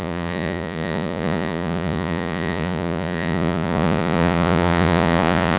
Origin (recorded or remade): remade